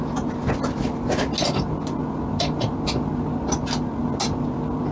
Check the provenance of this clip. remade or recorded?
recorded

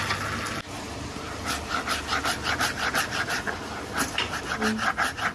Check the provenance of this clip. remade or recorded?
recorded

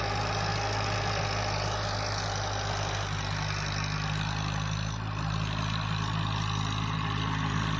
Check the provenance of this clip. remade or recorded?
recorded